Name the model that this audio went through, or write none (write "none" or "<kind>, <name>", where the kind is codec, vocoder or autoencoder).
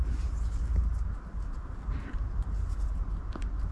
none